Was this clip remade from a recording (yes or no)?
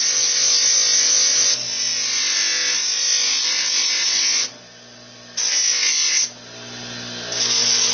no